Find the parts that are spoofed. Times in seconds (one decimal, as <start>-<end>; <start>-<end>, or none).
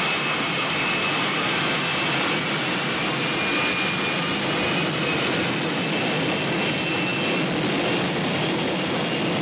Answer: none